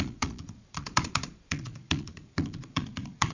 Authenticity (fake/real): fake